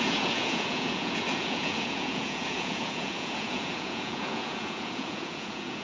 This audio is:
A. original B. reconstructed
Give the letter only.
B